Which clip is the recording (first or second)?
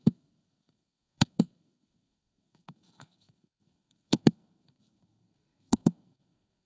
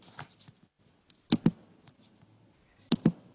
second